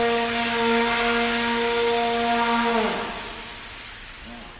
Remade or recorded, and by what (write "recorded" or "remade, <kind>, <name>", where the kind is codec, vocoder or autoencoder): recorded